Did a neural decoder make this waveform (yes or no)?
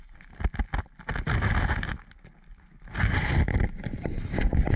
no